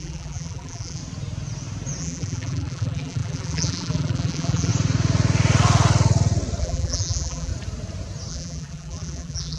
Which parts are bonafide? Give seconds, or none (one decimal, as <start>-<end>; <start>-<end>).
1.0-2.0; 4.7-6.6; 7.5-8.3